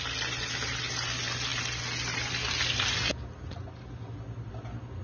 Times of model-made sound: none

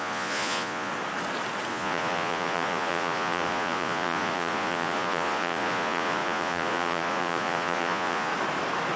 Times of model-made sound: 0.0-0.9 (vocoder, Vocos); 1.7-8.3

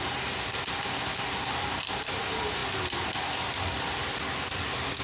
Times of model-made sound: none